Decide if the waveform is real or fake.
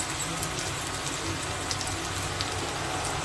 real